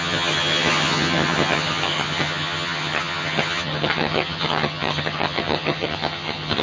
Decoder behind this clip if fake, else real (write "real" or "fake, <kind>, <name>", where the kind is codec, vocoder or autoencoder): fake, vocoder, HiFi-GAN